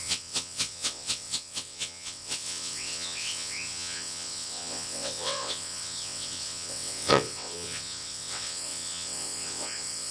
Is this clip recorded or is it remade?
remade